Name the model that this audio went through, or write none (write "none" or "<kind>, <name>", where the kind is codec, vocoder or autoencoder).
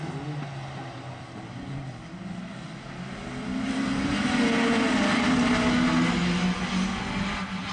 none